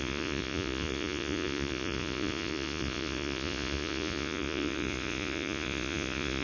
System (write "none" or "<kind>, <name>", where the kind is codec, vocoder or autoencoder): vocoder, Vocos